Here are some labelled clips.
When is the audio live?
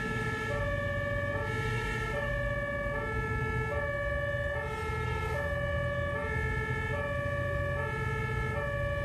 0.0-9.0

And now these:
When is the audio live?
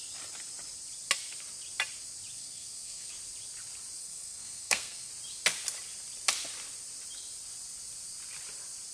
0.0-2.4; 3.1-4.0; 5.1-8.9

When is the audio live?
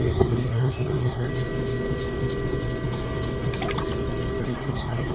1.3-4.4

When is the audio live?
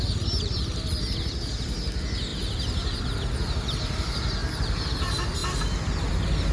0.0-6.5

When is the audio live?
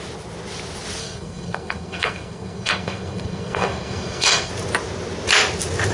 0.0-1.0; 4.5-5.9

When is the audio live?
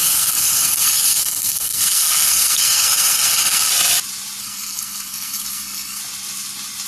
3.7-4.4; 6.0-6.9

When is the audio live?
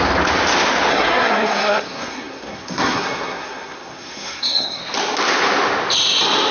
0.0-0.9; 4.8-6.5